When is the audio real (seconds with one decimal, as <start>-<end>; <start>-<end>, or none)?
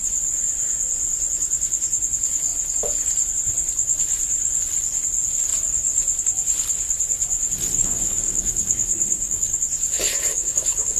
0.0-7.8; 9.6-10.3